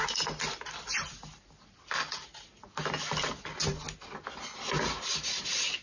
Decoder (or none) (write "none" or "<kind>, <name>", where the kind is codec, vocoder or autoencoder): none